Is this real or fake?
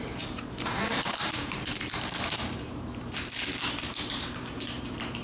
fake